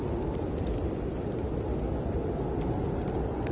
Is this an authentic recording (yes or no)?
yes